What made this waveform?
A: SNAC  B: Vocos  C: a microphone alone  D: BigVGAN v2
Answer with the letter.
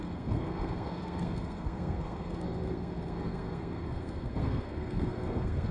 A